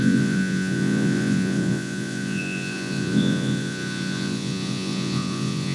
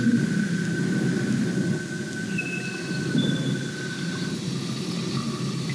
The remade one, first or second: first